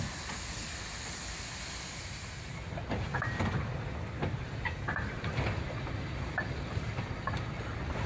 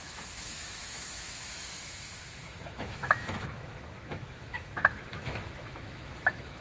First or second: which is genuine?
first